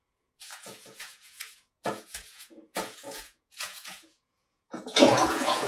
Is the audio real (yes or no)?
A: no